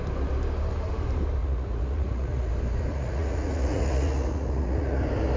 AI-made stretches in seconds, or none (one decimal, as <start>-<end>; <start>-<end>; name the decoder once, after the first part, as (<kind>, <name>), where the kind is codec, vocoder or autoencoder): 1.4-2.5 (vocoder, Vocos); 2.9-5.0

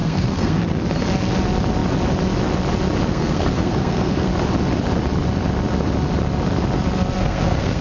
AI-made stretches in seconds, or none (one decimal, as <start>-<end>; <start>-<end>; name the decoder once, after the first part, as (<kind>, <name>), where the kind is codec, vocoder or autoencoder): 0.0-0.6 (codec, SNAC); 3.1-4.3; 7.2-7.8

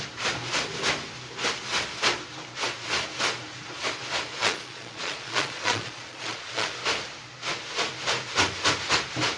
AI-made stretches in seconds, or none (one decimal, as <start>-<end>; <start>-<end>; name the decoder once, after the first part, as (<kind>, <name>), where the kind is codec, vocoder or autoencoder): 4.4-6.7 (vocoder, Vocos)

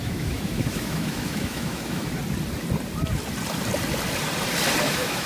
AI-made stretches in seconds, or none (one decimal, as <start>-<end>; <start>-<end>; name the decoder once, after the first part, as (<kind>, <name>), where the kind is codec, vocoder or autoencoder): 0.0-2.1 (autoencoder, DAC-VAE); 4.8-5.3